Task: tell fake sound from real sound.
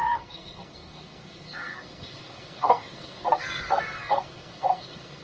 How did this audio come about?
fake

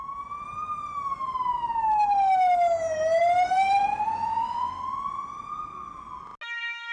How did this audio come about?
real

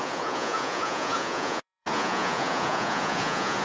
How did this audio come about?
fake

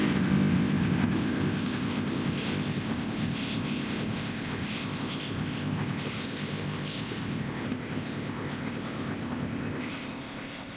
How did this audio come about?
fake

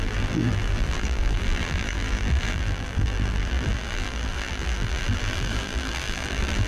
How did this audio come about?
fake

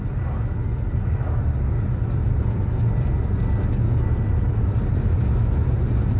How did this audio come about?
real